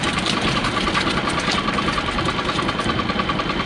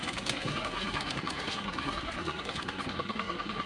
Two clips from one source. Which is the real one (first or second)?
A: first